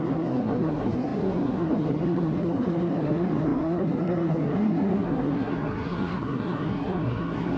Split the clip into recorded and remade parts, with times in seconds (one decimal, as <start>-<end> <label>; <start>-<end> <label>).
0.0-7.6 remade